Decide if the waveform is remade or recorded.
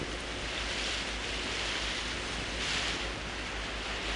recorded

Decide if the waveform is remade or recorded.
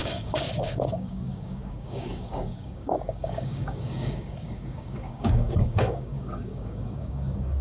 remade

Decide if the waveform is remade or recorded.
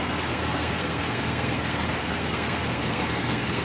remade